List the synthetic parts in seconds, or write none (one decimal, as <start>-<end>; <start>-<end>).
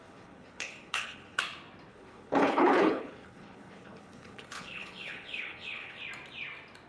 0.0-1.4; 1.9-6.0